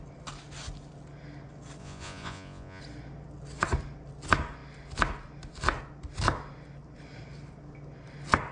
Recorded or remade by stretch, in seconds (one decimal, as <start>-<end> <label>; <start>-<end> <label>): 0.0-1.8 recorded; 1.8-2.8 remade; 2.8-8.5 recorded